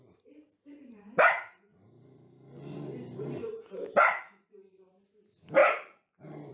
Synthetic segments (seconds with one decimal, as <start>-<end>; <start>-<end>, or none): 0.0-1.9; 3.8-5.1; 5.6-6.5